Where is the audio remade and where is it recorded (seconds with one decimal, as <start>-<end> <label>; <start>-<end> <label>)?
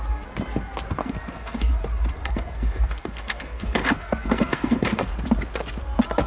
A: 0.0-1.0 recorded; 1.0-1.7 remade; 1.7-2.2 recorded; 2.2-5.1 remade; 5.1-6.3 recorded